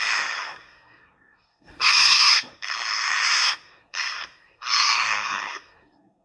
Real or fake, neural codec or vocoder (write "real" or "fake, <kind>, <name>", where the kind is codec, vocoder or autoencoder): fake, codec, SNAC